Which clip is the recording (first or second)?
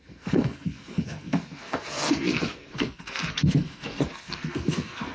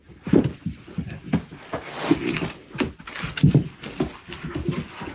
second